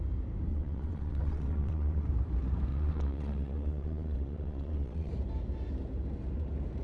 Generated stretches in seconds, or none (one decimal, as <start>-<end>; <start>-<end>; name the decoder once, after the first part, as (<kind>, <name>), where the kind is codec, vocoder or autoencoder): 0.5-2.1 (vocoder, WaveNeXt); 2.7-5.1